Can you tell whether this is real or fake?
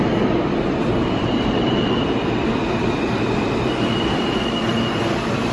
fake